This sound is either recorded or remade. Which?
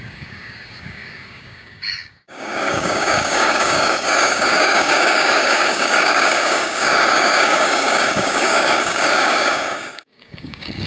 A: remade